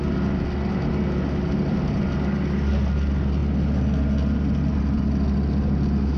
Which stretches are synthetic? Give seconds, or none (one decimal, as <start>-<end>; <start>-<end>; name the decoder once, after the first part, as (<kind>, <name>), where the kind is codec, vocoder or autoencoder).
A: none